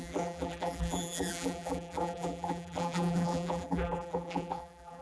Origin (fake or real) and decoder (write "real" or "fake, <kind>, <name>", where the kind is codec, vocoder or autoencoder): fake, vocoder, BigVGAN v2